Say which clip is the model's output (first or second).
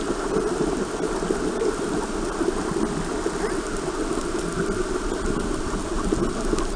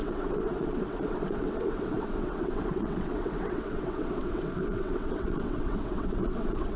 second